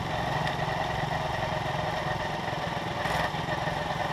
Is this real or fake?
real